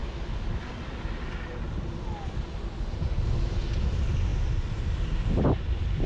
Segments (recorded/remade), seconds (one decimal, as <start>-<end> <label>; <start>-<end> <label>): 0.0-6.1 recorded